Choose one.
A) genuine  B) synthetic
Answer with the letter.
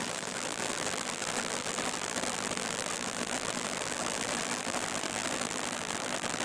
B